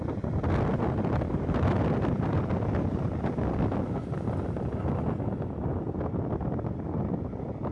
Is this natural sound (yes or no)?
yes